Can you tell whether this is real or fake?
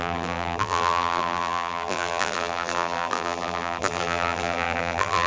fake